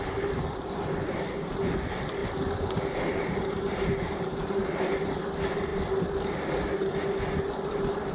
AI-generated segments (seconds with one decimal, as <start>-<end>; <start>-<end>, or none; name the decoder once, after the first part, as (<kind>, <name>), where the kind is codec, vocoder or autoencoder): 2.2-4.9 (vocoder, BigVGAN v2)